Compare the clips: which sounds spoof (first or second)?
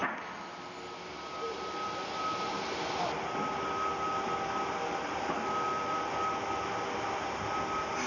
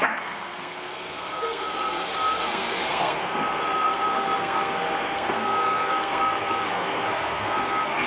second